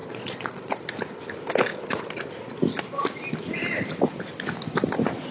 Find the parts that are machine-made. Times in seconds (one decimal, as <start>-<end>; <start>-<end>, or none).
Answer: 0.0-0.8